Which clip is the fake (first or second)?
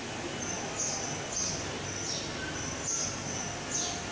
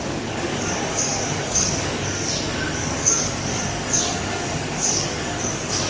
second